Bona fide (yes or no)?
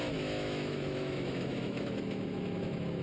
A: no